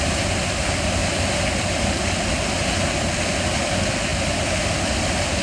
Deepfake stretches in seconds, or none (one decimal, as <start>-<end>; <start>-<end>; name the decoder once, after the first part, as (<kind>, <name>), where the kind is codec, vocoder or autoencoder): none

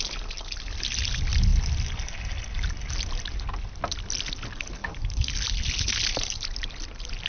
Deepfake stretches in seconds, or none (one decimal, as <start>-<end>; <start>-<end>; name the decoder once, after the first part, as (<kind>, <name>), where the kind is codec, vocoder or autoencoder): 4.8-5.5 (vocoder, BigVGAN v2)